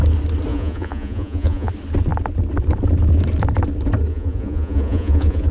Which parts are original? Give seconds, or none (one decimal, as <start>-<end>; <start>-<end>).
0.0-0.5; 1.7-4.1